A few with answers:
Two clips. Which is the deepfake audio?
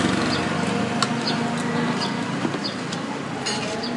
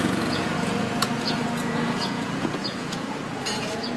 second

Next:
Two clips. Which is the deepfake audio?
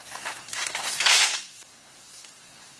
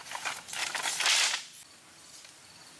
first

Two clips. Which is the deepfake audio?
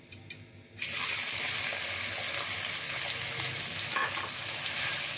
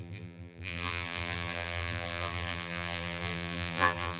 second